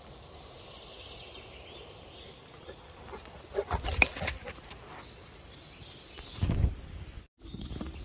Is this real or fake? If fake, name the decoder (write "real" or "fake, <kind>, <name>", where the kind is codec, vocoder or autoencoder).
real